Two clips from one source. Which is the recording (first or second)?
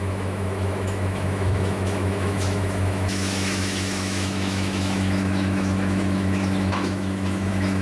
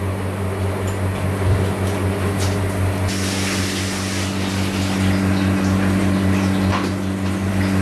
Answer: second